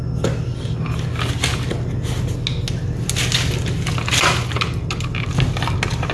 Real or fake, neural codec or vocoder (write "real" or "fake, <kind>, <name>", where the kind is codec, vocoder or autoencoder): real